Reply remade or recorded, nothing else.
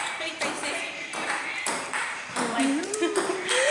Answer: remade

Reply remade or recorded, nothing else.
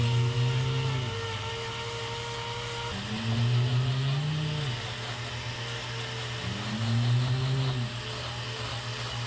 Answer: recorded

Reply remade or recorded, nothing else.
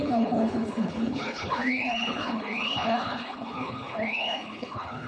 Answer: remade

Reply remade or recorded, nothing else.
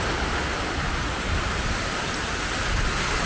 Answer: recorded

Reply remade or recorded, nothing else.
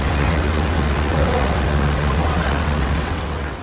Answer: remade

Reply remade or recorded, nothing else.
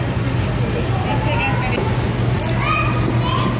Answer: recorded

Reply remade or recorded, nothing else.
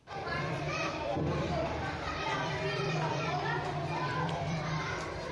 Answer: remade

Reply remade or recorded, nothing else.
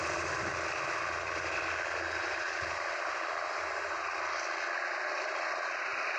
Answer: recorded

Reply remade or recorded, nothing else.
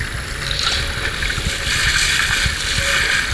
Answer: recorded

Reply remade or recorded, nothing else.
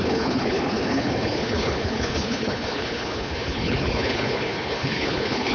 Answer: remade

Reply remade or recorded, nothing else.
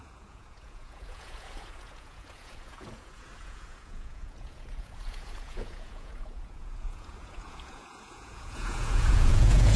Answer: remade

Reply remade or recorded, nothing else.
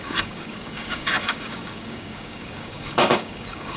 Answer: remade